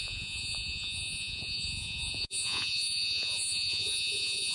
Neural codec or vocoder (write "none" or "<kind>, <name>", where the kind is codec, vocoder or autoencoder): vocoder, Vocos